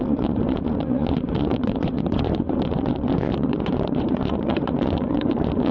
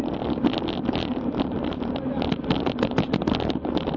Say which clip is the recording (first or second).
second